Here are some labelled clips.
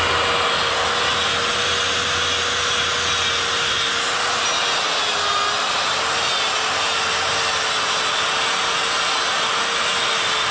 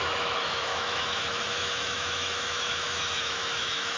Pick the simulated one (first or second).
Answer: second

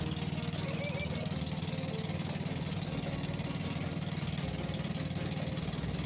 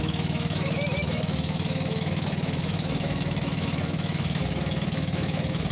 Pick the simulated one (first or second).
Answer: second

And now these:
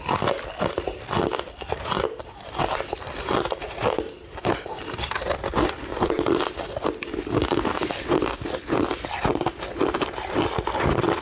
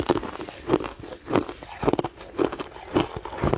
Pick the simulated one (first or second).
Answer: first